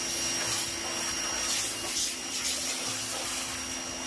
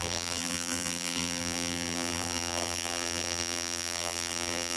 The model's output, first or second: second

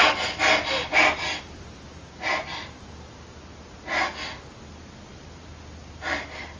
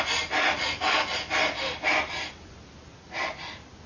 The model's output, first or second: second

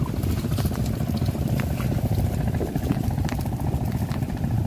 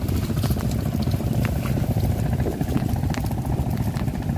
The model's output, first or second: first